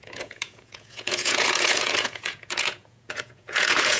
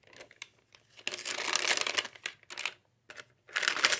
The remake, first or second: first